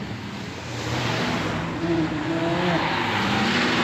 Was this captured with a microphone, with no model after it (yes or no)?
yes